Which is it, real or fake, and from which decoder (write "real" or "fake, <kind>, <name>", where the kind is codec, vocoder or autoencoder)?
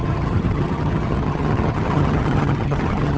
fake, vocoder, HiFi-GAN